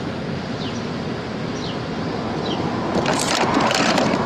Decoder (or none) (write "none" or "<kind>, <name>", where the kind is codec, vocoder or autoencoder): none